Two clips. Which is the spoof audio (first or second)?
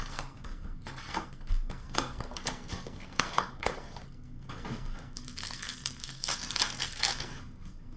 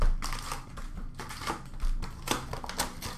first